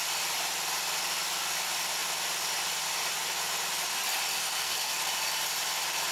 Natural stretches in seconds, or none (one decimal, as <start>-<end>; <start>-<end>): 0.0-4.3; 5.0-6.1